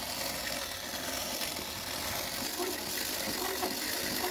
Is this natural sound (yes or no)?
yes